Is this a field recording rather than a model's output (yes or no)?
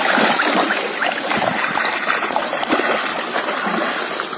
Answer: yes